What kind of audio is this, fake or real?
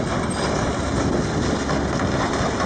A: real